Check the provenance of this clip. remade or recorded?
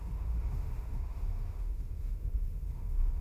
remade